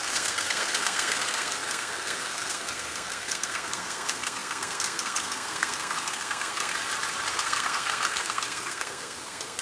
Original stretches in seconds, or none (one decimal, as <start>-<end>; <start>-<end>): 6.7-7.3